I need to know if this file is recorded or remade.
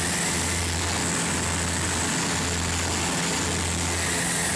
recorded